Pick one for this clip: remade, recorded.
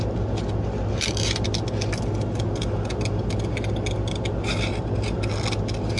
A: recorded